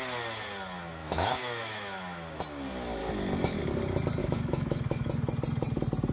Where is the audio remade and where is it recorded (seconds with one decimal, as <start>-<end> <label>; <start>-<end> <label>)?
0.0-1.0 recorded; 1.0-2.4 remade; 2.4-3.0 recorded; 3.0-3.6 remade; 3.6-4.2 recorded; 4.2-5.1 remade; 5.1-6.1 recorded

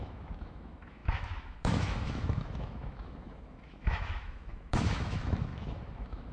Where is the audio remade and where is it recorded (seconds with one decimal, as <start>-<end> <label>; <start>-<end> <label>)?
0.0-6.3 remade

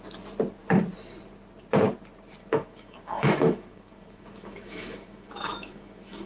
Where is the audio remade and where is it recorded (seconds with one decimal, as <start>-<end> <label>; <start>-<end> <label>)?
0.0-2.4 recorded; 2.4-6.3 remade

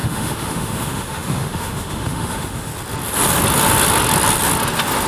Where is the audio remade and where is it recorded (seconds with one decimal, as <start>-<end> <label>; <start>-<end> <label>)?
0.0-2.7 remade; 2.7-5.1 recorded

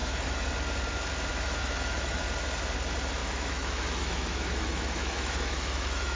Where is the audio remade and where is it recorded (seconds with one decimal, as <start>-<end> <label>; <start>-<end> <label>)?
0.0-0.5 remade; 0.5-1.3 recorded; 1.3-2.2 remade; 2.2-3.2 recorded; 3.2-6.2 remade

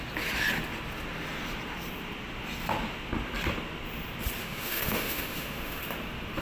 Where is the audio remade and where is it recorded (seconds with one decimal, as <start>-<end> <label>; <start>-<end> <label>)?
0.0-4.4 recorded; 4.4-5.8 remade; 5.8-6.4 recorded

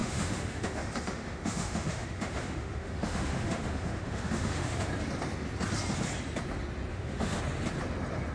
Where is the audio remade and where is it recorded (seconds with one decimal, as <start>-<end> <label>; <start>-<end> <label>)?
0.0-4.9 remade; 4.9-6.9 recorded; 6.9-7.4 remade; 7.4-8.3 recorded

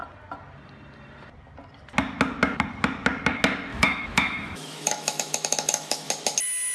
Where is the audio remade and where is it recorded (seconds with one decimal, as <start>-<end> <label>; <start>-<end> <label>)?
0.0-3.7 recorded; 3.7-6.1 remade; 6.1-6.7 recorded